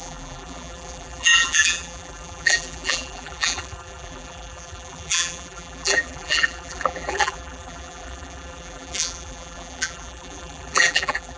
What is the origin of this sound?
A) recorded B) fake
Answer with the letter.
B